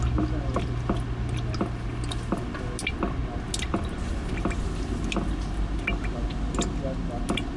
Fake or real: real